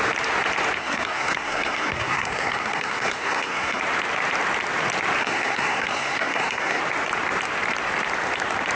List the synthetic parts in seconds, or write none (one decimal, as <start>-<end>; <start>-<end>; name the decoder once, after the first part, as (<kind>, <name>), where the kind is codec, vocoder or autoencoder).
0.8-3.8 (codec, SNAC); 5.2-6.8